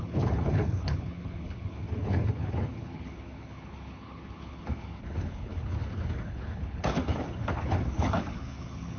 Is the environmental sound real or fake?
fake